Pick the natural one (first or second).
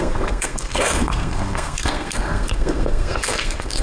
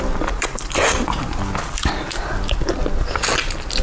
second